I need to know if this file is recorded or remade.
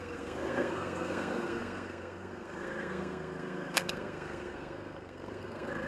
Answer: remade